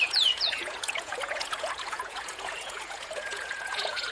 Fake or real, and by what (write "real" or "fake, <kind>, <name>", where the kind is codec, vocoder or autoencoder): fake, vocoder, Vocos